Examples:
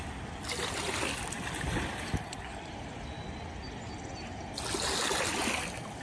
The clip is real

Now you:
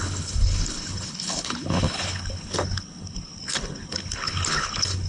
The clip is fake